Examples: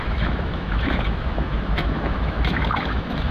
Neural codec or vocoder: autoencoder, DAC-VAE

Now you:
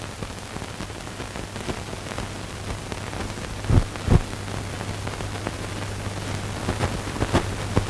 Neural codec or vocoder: none